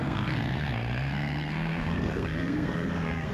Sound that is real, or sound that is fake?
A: fake